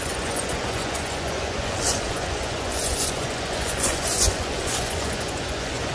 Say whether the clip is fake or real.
fake